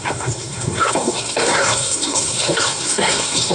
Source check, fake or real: fake